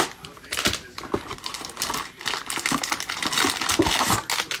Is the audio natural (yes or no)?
yes